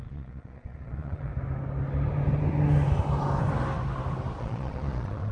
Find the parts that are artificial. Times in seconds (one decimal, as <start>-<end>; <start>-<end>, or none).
0.0-1.3; 4.4-5.3